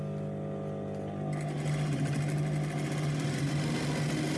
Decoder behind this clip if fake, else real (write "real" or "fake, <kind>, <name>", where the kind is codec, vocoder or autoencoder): real